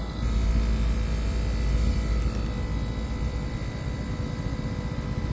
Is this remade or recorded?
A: recorded